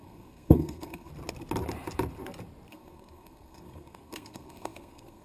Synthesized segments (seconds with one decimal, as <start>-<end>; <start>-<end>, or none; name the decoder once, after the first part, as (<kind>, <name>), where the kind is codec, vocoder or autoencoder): 0.0-1.1 (codec, SNAC); 2.7-5.2